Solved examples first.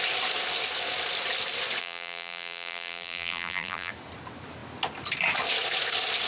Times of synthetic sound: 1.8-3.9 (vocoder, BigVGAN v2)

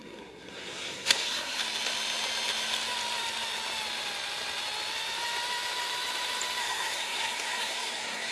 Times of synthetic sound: 0.0-1.6 (codec, SNAC); 6.6-8.3

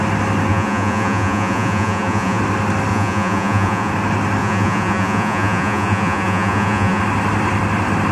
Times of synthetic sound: 0.5-2.4 (vocoder, Vocos); 2.9-3.9; 4.4-7.0

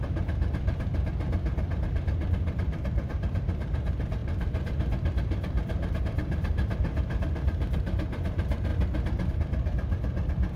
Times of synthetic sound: 0.0-0.9 (vocoder, BigVGAN v2); 2.5-8.7; 9.3-10.6

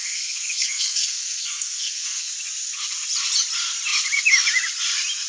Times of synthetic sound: 0.0-2.3 (codec, SNAC)

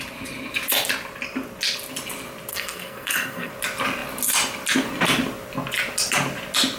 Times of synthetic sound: 2.5-3.5 (codec, SNAC)